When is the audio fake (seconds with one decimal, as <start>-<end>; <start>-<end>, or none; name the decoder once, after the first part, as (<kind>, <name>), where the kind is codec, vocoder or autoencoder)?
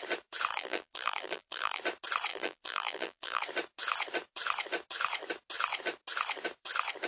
0.5-1.8 (vocoder, BigVGAN v2); 2.3-3.4